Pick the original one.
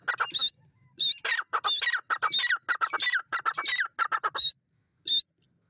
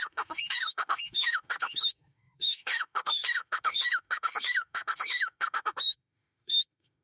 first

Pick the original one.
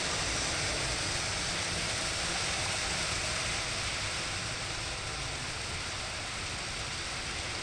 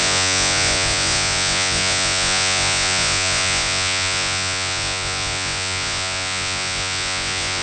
first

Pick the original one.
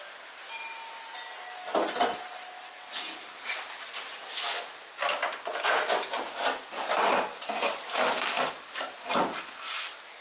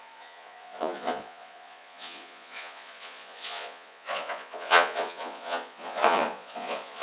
first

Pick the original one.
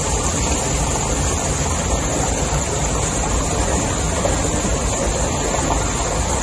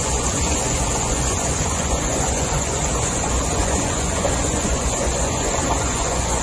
first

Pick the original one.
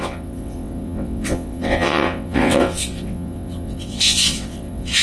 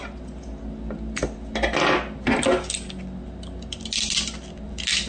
second